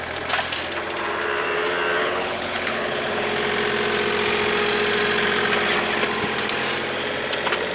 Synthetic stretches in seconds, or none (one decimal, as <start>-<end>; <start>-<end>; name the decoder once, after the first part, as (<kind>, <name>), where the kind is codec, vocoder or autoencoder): 2.0-3.2 (codec, HILCodec)